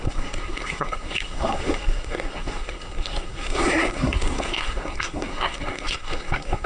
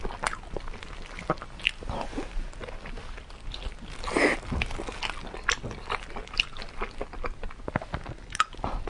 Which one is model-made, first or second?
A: first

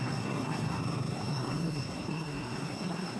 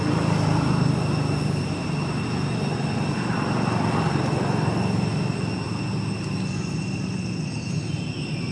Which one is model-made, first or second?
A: first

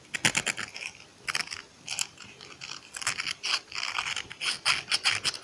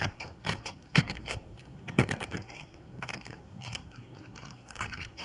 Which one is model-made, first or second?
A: second